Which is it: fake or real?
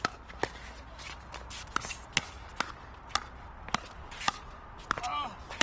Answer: real